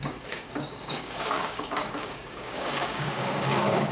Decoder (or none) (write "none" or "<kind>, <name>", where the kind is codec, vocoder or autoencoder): codec, DAC